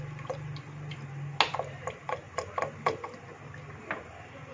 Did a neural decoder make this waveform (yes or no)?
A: no